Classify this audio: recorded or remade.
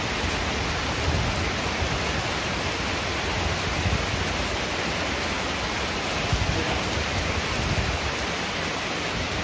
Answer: recorded